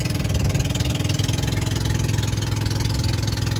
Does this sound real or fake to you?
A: real